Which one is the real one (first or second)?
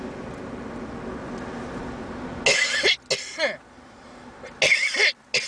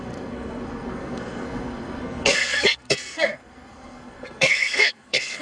first